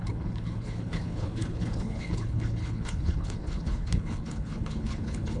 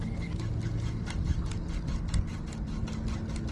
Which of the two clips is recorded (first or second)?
second